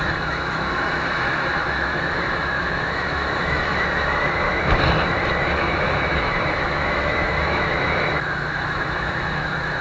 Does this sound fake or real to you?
fake